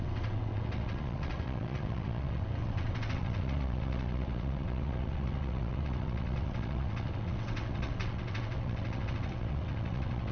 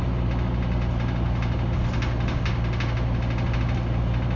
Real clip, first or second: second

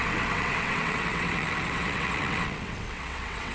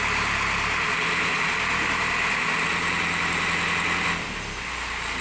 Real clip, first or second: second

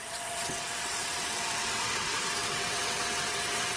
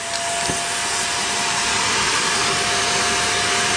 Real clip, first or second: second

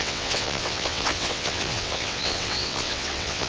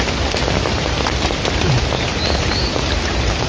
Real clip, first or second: second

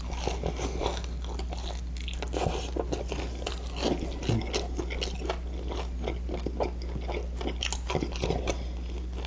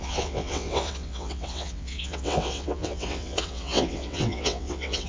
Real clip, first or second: first